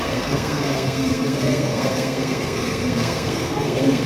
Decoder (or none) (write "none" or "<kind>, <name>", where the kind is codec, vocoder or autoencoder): codec, SNAC